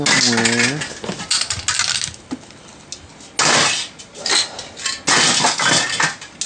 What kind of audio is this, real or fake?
real